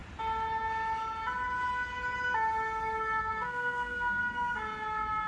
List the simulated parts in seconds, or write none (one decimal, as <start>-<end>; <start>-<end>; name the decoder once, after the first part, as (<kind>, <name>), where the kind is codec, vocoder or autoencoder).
3.2-4.2 (codec, SNAC)